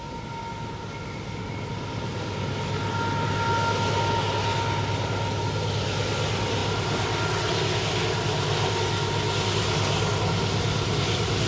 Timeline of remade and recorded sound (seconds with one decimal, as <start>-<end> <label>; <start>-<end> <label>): 0.0-11.5 recorded